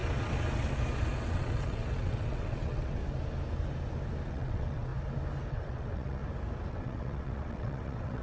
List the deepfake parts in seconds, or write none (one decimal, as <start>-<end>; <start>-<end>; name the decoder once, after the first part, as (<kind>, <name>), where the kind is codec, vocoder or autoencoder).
1.2-3.0 (vocoder, WaveNeXt); 4.3-4.9; 5.5-6.2; 6.7-8.2